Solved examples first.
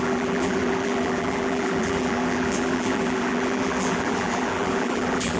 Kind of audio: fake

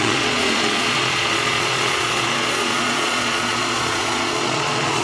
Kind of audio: fake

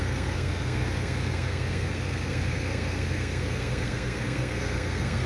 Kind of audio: fake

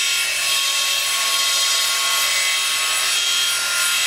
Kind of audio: real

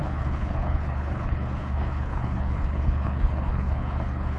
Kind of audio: fake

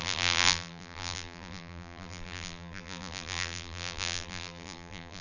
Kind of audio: fake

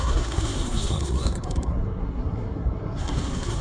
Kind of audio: fake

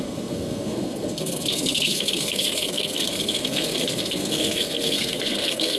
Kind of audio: fake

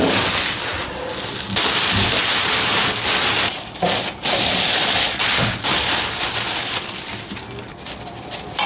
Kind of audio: real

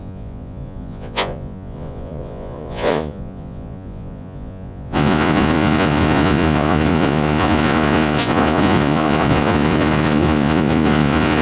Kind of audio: fake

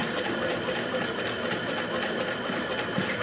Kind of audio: real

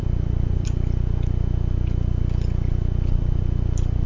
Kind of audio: real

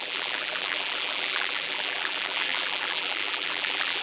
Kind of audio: fake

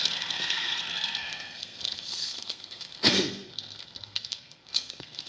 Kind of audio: fake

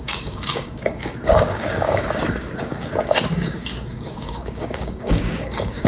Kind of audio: fake